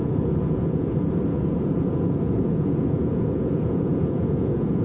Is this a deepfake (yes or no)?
yes